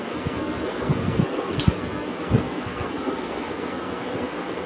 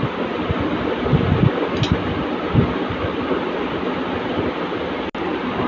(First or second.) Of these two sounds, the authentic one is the second